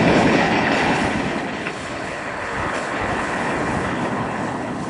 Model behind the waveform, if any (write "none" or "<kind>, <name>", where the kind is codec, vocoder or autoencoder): codec, HILCodec